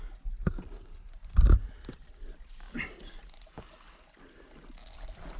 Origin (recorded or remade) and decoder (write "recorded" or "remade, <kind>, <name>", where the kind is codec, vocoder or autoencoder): recorded